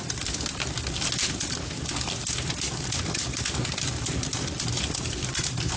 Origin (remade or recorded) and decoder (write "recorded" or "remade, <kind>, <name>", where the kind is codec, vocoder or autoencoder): recorded